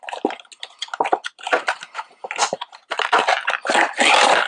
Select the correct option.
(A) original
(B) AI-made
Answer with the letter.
A